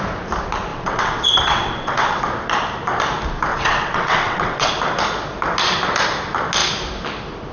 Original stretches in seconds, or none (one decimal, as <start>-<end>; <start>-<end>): 0.0-0.7; 2.2-3.5; 4.7-7.5